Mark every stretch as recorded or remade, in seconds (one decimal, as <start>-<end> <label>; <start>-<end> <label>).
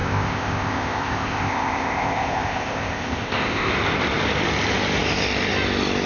0.0-3.7 remade; 3.7-6.1 recorded